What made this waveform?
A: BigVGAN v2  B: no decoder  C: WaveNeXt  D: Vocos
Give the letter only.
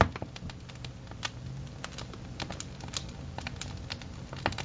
B